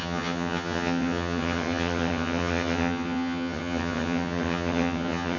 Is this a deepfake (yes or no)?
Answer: yes